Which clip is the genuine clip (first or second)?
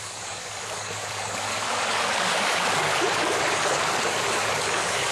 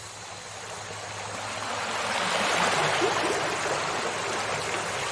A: second